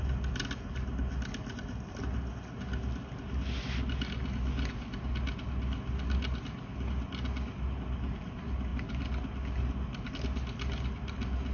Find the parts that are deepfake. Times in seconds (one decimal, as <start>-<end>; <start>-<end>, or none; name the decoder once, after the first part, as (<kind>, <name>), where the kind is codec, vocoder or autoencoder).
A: none